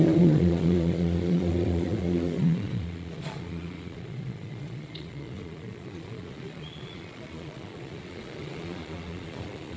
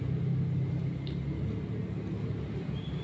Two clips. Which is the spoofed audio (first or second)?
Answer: first